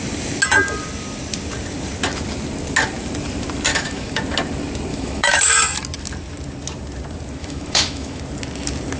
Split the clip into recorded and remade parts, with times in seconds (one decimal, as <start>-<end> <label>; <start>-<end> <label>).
0.0-3.7 recorded; 3.7-4.2 remade; 4.2-4.9 recorded; 4.9-5.5 remade; 5.5-7.4 recorded; 7.4-8.2 remade; 8.2-9.0 recorded